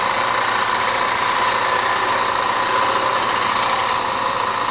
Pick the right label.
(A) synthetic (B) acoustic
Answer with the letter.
B